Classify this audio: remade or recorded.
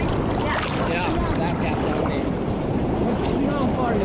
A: recorded